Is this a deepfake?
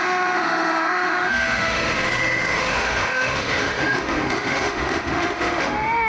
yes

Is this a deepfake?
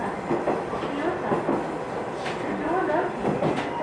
no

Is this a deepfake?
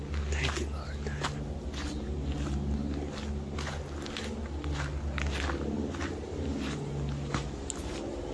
no